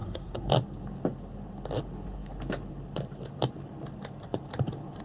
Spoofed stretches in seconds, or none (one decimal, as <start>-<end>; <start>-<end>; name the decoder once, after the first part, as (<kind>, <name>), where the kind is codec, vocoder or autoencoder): 0.0-0.5 (codec, SNAC)